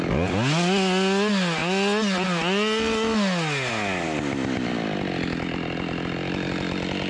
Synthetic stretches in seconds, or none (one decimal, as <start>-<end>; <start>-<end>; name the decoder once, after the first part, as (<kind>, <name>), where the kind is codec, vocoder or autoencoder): none